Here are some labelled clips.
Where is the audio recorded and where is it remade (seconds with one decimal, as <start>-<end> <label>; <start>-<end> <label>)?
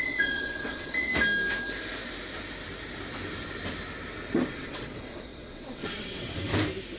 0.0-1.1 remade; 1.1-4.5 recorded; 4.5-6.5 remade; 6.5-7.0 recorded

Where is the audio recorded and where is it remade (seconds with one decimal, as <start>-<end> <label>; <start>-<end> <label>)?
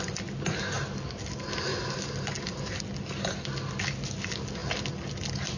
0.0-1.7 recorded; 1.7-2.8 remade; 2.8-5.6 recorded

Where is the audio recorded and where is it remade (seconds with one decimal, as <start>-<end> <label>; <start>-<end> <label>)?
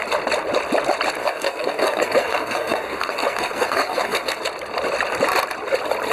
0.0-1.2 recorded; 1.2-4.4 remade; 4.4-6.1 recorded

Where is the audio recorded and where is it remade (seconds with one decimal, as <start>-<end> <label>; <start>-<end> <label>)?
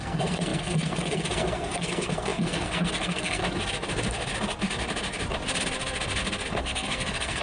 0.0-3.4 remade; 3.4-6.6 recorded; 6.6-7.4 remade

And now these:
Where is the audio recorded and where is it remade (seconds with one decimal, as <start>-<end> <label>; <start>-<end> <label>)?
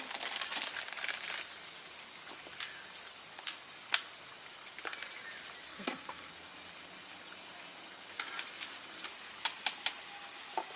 0.0-5.7 recorded; 5.7-6.3 remade; 6.3-10.8 recorded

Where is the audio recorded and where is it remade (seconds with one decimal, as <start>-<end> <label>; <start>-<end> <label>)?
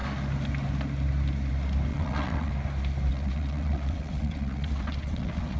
0.0-1.9 recorded; 1.9-2.5 remade; 2.5-3.1 recorded; 3.1-5.6 remade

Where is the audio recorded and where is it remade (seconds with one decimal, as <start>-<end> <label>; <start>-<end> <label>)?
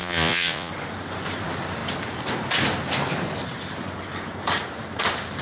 0.0-0.7 remade; 0.7-5.4 recorded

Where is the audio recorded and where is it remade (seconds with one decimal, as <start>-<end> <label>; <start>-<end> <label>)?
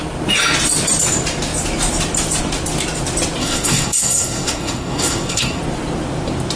0.0-3.4 recorded; 3.4-5.6 remade; 5.6-6.6 recorded